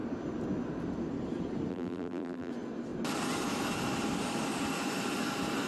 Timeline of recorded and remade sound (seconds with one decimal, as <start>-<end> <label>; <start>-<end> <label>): 0.0-1.7 recorded; 1.7-2.5 remade; 2.5-5.7 recorded